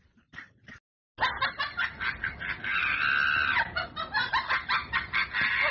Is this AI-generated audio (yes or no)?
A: no